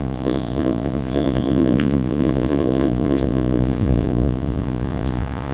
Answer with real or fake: fake